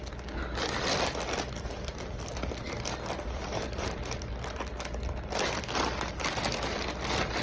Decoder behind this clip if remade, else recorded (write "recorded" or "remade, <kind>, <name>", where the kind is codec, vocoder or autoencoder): remade, vocoder, BigVGAN v2